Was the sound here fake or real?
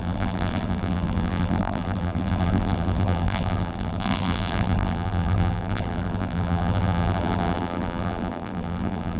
fake